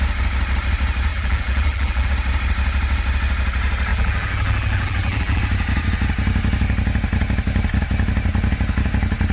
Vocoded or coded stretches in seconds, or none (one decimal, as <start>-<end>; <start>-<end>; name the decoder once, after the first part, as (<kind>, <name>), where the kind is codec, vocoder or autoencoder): 1.1-2.1 (vocoder, BigVGAN v2); 3.9-5.4